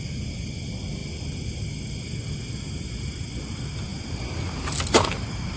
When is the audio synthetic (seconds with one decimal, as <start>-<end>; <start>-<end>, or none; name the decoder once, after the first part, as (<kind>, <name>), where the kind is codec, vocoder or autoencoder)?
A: none